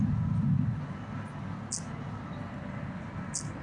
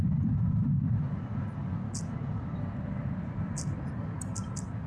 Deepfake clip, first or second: second